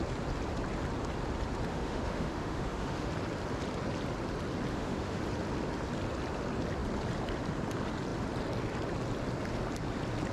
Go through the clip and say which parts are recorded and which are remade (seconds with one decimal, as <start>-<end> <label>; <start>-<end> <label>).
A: 0.0-1.7 recorded; 1.7-3.1 remade; 3.1-4.7 recorded; 4.7-5.2 remade; 5.2-10.3 recorded